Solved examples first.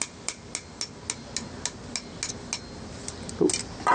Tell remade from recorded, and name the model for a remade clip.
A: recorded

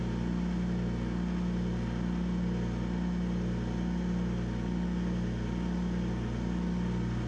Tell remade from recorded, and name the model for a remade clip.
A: recorded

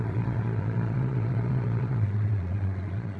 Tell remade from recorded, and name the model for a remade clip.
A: remade, vocoder, Vocos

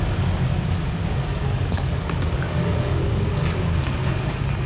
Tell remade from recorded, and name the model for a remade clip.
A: remade, codec, DAC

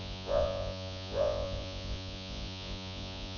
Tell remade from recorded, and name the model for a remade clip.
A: remade, vocoder, Vocos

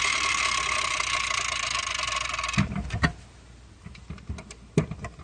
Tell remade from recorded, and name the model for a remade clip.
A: recorded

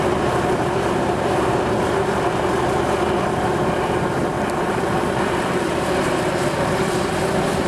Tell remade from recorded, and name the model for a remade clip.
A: remade, vocoder, BigVGAN v2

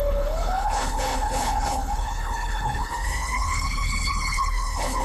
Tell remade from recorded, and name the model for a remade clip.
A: remade, codec, HILCodec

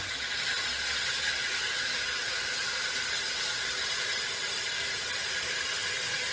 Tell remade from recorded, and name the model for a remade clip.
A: recorded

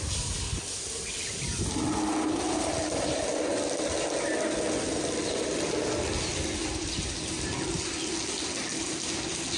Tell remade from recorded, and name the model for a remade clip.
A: recorded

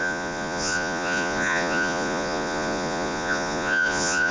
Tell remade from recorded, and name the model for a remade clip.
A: remade, vocoder, Vocos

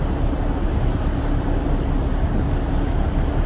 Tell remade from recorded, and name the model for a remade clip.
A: recorded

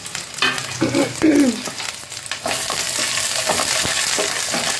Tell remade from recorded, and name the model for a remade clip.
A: recorded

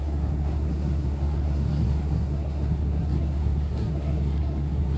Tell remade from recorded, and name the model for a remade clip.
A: remade, codec, SNAC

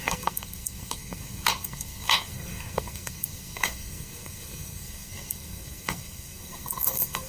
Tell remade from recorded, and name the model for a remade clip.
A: remade, codec, SNAC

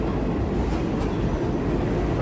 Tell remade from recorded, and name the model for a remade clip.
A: recorded